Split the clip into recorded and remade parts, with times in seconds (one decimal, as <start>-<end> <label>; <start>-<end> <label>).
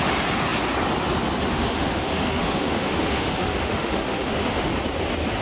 0.0-1.5 recorded; 1.5-4.7 remade; 4.7-5.4 recorded